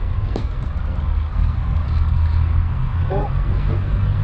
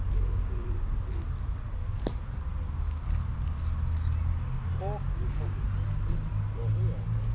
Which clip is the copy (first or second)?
first